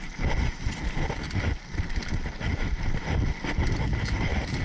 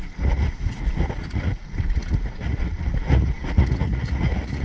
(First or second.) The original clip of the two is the first